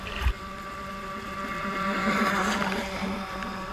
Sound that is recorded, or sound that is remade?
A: recorded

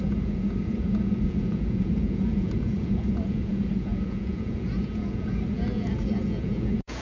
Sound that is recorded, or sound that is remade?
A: remade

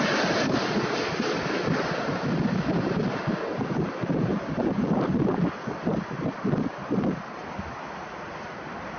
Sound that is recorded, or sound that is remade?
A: recorded